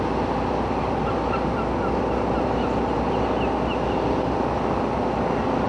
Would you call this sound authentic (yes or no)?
yes